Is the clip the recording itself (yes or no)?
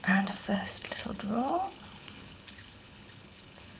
no